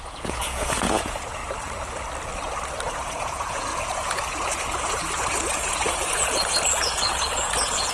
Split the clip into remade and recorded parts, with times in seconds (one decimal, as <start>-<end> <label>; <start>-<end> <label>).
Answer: 0.0-1.4 remade; 1.4-2.9 recorded; 2.9-7.9 remade